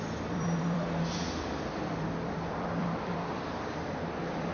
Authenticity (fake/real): fake